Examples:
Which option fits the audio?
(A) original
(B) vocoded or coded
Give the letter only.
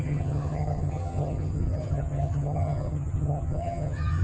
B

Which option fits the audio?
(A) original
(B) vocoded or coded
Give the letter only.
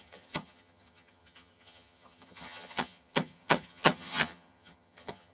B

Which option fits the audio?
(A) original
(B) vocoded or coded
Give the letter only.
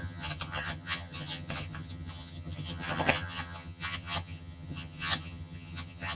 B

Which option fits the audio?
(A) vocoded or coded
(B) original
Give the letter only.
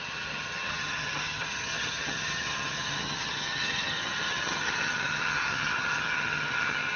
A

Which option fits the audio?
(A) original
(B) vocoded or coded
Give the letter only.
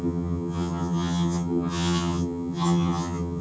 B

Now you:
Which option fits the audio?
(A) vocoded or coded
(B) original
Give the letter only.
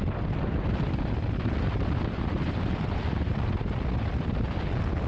B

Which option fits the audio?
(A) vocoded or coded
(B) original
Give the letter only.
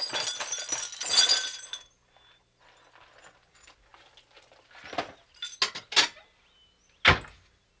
B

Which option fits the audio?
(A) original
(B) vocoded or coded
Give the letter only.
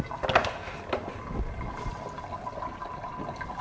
A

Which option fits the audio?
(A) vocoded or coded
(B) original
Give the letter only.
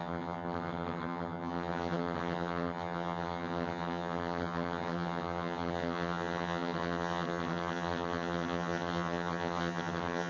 A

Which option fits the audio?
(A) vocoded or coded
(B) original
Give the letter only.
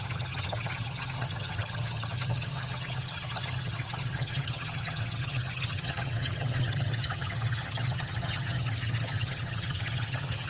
A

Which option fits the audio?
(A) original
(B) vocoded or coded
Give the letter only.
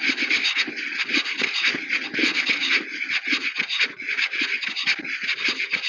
A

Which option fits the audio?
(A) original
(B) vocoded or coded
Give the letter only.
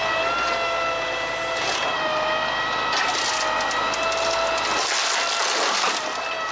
A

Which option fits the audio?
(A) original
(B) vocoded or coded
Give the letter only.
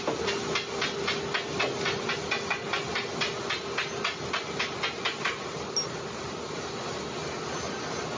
A